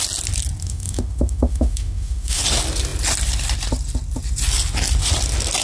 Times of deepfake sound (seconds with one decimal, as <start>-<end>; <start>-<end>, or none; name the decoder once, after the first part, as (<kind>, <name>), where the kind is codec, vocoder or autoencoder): 0.6-2.4 (autoencoder, DAC-VAE)